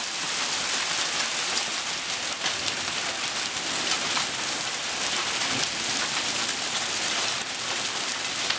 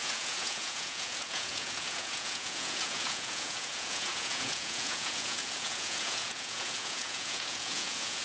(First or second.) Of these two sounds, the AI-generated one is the second